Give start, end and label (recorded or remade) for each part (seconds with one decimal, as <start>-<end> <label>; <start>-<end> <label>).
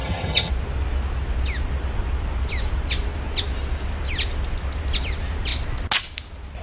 0.0-0.5 remade; 0.5-6.6 recorded